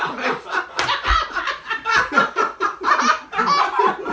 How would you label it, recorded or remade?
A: recorded